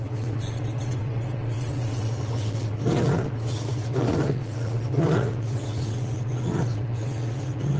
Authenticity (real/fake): fake